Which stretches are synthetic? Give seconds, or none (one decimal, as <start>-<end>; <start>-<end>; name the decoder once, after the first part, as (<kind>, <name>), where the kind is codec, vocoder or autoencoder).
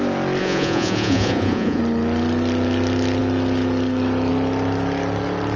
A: 0.4-1.8 (vocoder, Vocos)